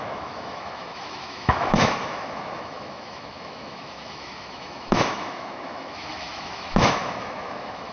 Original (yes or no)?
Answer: no